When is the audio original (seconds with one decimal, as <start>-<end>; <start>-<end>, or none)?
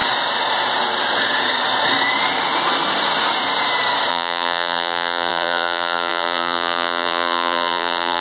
0.0-4.1